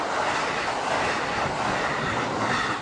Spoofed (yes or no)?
no